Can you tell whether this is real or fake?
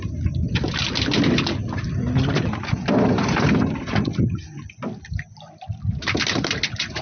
real